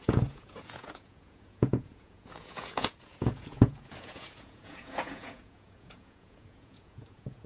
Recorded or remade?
remade